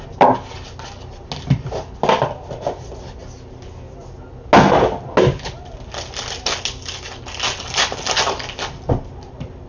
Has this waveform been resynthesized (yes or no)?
no